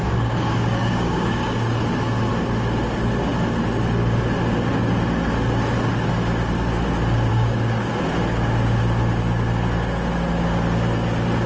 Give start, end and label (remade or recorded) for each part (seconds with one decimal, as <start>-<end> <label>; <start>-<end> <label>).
0.0-1.5 remade; 1.5-7.3 recorded; 7.3-7.9 remade; 7.9-11.5 recorded